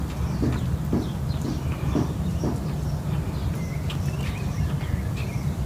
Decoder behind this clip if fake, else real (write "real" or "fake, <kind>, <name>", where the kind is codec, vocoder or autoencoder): real